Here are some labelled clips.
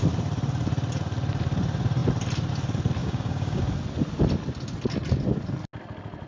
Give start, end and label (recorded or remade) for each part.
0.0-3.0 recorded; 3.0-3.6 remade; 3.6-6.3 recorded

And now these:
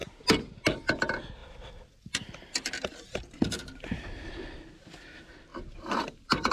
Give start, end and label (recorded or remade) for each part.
0.0-5.5 recorded; 5.5-6.5 remade

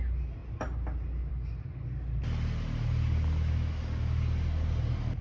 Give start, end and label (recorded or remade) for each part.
0.0-5.2 recorded

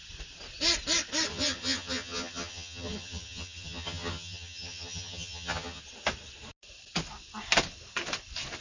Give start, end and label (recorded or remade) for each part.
0.0-1.3 recorded; 1.3-5.8 remade; 5.8-8.6 recorded

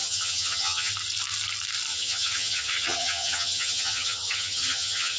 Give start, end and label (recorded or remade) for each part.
0.0-0.9 remade; 0.9-1.9 recorded; 1.9-5.2 remade

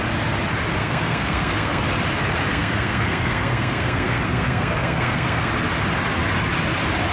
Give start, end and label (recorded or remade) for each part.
0.0-0.8 recorded; 0.8-1.8 remade; 1.8-2.5 recorded; 2.5-5.5 remade; 5.5-7.1 recorded